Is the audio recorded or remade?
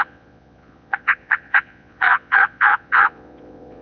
remade